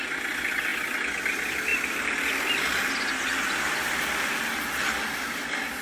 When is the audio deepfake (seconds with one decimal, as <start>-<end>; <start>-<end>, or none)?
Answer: none